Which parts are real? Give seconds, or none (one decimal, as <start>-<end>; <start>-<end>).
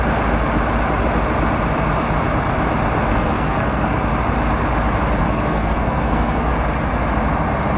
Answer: 0.0-3.1; 4.0-5.2; 6.5-7.8